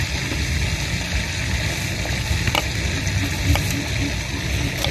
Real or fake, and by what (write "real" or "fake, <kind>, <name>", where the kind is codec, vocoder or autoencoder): real